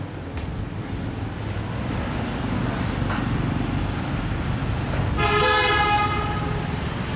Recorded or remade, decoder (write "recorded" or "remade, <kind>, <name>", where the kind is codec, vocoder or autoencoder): recorded